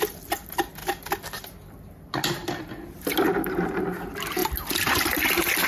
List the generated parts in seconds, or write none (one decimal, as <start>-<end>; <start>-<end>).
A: none